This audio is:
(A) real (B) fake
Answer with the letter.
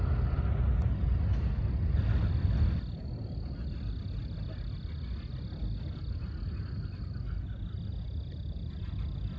A